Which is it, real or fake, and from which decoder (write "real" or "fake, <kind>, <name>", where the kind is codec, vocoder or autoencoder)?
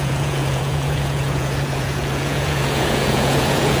fake, vocoder, Vocos